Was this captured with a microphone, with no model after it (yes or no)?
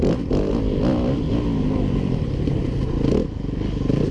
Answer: yes